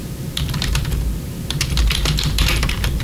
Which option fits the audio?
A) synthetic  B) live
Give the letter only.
A